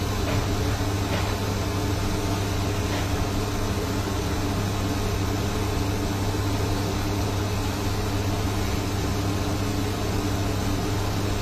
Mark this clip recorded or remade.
recorded